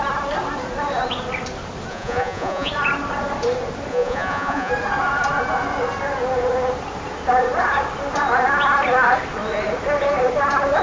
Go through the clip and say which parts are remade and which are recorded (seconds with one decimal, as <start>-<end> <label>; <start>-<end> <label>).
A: 0.0-1.9 recorded; 1.9-2.7 remade; 2.7-3.9 recorded; 3.9-4.7 remade; 4.7-10.8 recorded